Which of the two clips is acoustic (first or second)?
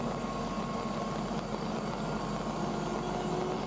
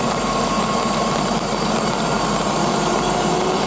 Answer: first